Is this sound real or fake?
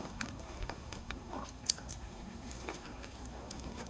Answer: fake